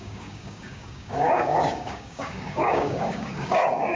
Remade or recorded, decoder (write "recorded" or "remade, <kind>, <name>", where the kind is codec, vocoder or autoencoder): remade, codec, DAC